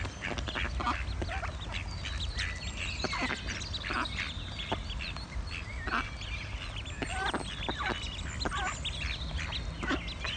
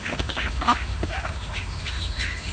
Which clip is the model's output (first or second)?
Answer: second